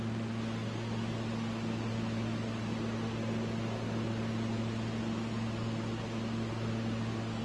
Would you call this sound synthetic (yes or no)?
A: no